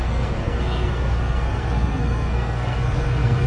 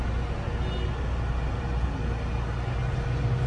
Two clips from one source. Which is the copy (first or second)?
first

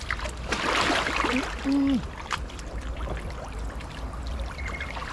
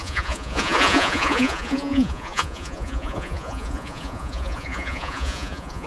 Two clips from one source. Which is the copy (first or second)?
second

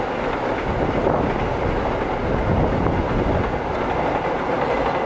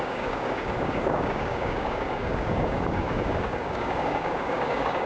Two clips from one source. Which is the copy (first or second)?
second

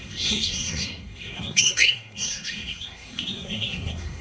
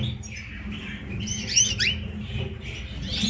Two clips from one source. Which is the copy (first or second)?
first